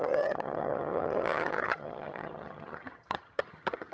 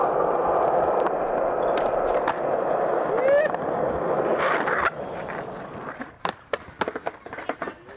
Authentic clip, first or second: second